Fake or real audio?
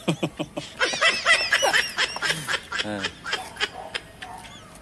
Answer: real